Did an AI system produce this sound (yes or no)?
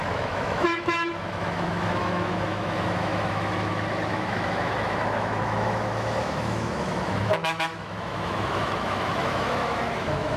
yes